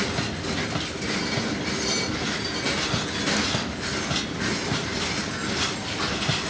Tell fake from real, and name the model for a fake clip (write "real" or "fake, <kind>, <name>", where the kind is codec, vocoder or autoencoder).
real